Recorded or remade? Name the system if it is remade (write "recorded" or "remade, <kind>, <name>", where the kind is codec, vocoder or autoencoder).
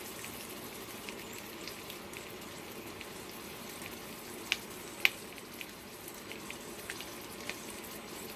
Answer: recorded